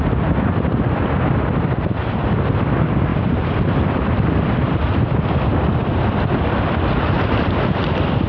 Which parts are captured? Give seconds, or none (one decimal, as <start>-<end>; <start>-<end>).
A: none